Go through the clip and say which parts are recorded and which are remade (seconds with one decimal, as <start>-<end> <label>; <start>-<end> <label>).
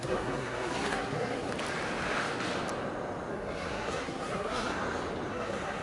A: 0.0-1.5 remade; 1.5-3.3 recorded; 3.3-4.8 remade; 4.8-5.3 recorded; 5.3-5.8 remade